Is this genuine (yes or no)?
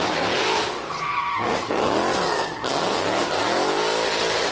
yes